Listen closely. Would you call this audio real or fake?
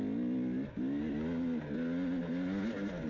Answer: real